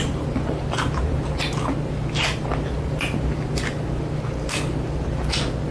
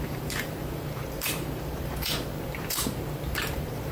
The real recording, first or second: first